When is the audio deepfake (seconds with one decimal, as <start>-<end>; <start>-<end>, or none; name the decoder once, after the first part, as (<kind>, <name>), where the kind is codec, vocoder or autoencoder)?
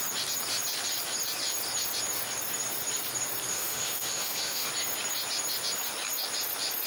3.5-4.7 (autoencoder, DAC-VAE)